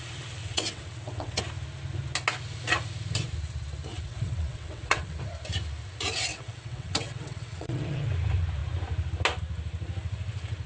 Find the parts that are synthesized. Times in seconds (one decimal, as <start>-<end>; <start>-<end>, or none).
0.4-1.4; 3.9-5.2; 6.3-8.1